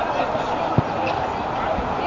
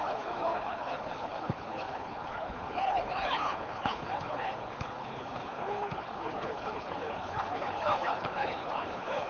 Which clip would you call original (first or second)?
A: first